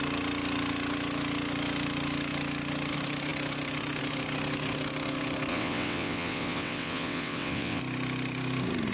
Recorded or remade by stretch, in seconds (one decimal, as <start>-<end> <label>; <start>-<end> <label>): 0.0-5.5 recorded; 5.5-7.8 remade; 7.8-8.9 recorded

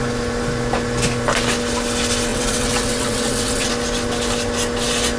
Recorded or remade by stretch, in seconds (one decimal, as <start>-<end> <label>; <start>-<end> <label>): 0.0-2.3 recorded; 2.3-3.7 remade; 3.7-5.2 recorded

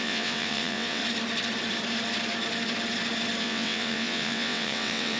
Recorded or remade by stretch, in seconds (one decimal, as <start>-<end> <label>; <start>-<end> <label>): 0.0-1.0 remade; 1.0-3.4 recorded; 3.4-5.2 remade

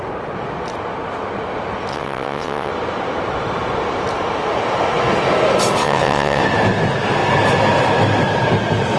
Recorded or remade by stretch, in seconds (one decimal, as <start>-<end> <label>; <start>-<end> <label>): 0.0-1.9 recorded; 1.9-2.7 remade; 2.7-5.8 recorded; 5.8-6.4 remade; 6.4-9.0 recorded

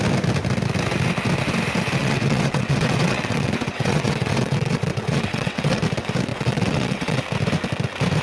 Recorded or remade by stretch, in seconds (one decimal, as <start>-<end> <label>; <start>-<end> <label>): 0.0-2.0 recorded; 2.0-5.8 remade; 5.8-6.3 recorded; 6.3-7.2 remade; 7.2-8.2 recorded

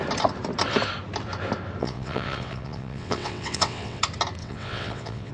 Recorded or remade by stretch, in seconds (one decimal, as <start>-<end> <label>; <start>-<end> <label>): 0.0-1.8 recorded; 1.8-4.0 remade; 4.0-4.4 recorded; 4.4-5.3 remade

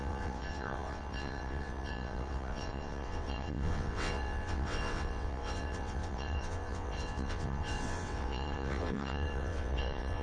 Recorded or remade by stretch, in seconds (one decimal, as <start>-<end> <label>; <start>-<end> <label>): 0.0-10.2 remade